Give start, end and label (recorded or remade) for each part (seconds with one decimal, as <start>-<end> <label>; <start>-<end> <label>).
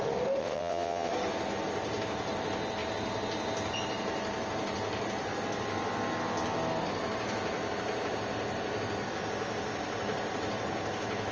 0.0-0.4 recorded; 0.4-1.1 remade; 1.1-11.3 recorded